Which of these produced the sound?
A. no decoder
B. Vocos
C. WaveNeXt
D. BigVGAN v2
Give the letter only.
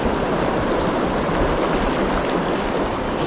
A